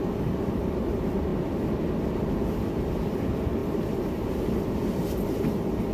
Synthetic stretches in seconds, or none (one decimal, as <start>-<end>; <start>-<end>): 0.0-1.3; 2.1-3.6